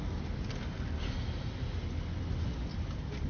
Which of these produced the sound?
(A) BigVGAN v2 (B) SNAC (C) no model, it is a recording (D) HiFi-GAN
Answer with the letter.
C